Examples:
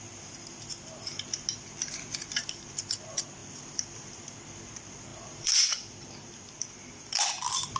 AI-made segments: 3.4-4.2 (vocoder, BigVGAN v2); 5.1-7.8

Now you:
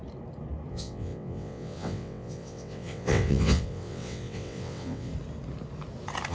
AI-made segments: 0.7-5.1 (vocoder, WaveNeXt)

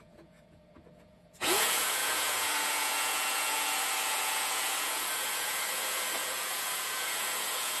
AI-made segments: 0.0-7.8 (vocoder, Vocos)

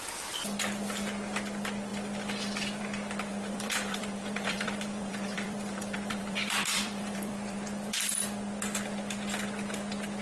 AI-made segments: 3.3-8.1 (vocoder, BigVGAN v2)